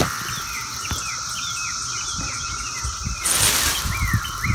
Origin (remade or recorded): recorded